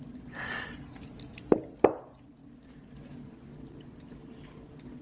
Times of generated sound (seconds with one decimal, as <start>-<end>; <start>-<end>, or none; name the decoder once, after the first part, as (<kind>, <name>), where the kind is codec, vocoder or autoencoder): none